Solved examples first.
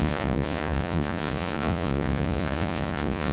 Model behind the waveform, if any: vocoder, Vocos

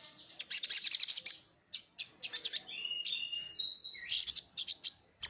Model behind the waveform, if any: none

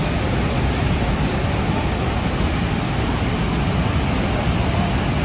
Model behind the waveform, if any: none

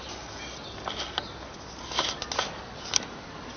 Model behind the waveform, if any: none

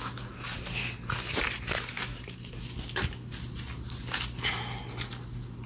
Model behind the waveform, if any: none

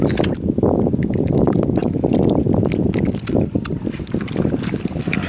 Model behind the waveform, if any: none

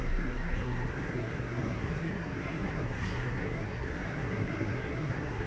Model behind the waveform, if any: codec, SNAC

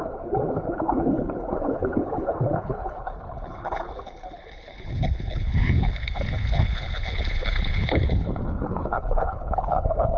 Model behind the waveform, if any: codec, HILCodec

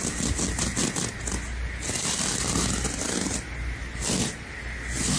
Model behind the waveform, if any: none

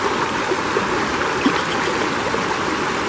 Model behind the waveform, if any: none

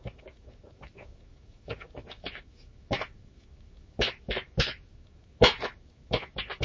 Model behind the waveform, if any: autoencoder, DAC-VAE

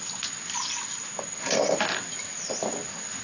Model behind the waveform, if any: none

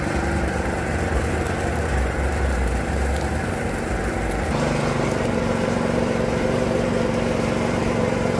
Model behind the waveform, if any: vocoder, BigVGAN v2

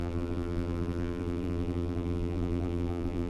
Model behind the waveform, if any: vocoder, BigVGAN v2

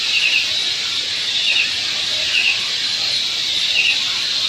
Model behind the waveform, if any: none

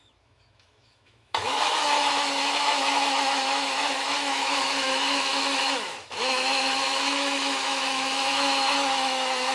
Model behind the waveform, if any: autoencoder, DAC-VAE